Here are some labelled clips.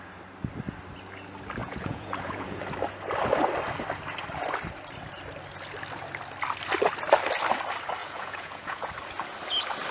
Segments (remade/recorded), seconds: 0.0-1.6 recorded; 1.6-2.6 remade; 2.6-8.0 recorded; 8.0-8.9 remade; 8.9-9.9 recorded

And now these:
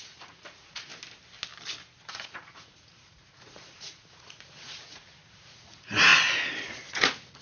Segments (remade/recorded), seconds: 0.0-0.9 remade; 0.9-2.1 recorded; 2.1-6.1 remade; 6.1-6.7 recorded; 6.7-7.4 remade

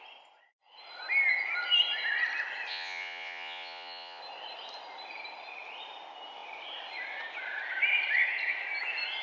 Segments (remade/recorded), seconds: 0.0-2.7 recorded; 2.7-4.2 remade; 4.2-9.2 recorded

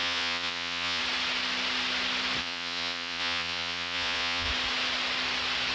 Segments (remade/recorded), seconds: 0.0-1.0 remade; 1.0-2.4 recorded; 2.4-4.5 remade; 4.5-5.7 recorded

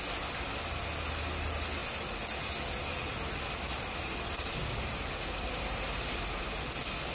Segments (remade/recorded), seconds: 0.0-7.1 recorded

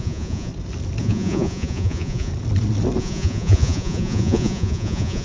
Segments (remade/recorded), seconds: 0.0-0.5 remade; 0.5-1.0 recorded; 1.0-2.3 remade; 2.3-3.0 recorded; 3.0-5.2 remade

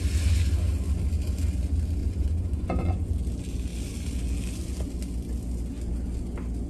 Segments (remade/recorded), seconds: 0.0-2.0 recorded; 2.0-3.1 remade; 3.1-6.7 recorded

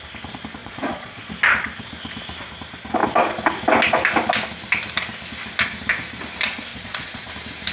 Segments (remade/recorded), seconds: 0.0-0.6 recorded; 0.6-1.3 remade; 1.3-6.7 recorded; 6.7-7.3 remade; 7.3-7.7 recorded